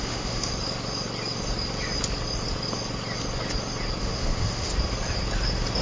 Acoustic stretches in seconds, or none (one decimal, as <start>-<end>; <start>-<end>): 0.5-4.0; 4.7-5.8